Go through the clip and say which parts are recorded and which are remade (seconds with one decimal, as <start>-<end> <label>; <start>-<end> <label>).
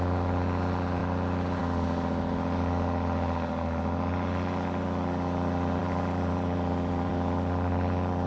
0.0-5.8 recorded; 5.8-7.1 remade; 7.1-8.3 recorded